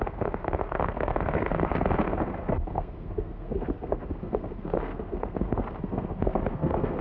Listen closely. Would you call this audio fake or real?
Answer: fake